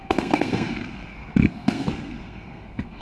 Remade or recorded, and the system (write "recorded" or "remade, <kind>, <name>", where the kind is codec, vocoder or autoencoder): remade, codec, SNAC